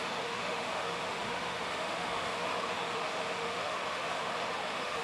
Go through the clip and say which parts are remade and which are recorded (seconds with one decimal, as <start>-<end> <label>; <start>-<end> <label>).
0.0-5.0 remade